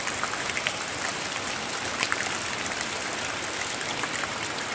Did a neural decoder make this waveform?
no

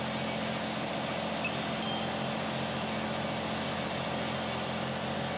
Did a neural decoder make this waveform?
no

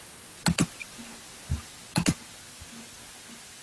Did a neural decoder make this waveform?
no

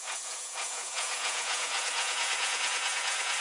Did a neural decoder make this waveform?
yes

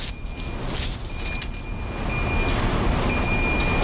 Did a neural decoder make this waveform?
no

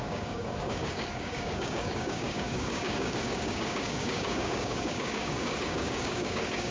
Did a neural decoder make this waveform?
yes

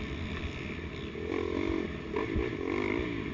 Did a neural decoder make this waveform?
no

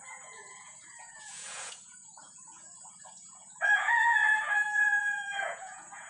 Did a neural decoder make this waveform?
yes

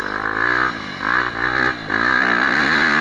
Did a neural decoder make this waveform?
no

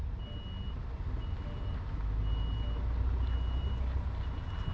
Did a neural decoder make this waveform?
no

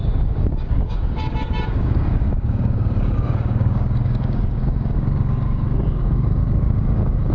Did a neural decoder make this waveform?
yes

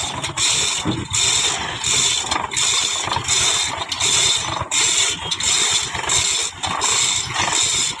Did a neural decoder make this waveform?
no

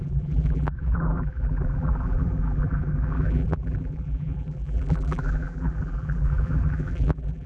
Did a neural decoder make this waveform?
yes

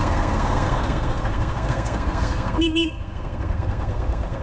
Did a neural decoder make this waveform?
yes